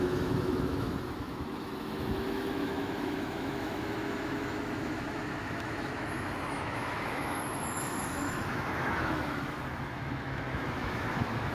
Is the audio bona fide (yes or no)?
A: no